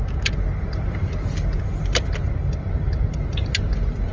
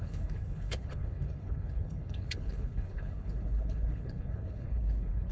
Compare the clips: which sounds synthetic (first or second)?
second